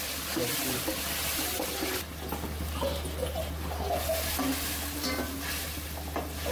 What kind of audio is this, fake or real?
real